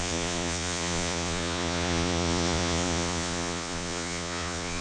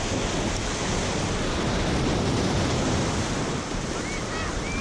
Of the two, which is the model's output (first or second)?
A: first